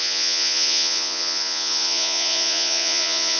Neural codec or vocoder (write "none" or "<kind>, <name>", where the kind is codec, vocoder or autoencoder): vocoder, Vocos